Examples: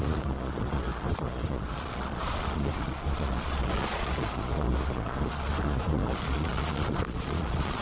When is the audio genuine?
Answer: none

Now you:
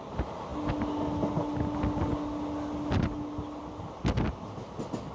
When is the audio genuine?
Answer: 0.0-5.1